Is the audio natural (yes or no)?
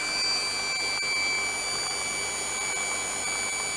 yes